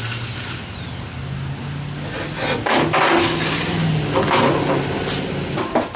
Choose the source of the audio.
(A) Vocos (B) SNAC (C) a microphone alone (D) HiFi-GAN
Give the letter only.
C